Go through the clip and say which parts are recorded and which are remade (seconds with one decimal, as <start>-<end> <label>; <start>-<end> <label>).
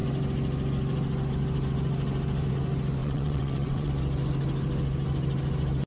0.0-3.0 recorded; 3.0-3.9 remade; 3.9-5.9 recorded